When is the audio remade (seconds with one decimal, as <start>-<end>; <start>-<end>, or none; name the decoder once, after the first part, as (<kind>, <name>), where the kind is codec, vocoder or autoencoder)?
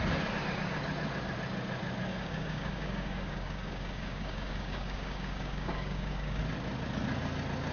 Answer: 2.1-6.4 (codec, DAC)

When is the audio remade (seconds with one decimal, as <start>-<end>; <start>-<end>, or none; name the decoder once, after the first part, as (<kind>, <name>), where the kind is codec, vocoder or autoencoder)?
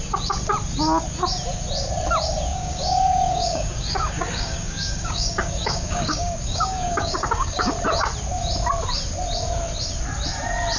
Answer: 2.5-7.7 (codec, DAC)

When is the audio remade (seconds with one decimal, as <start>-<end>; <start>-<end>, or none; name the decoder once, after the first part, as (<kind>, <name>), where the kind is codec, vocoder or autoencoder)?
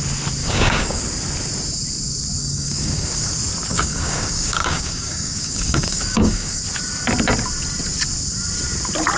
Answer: 0.4-1.0 (codec, DAC); 2.4-3.3; 3.7-6.6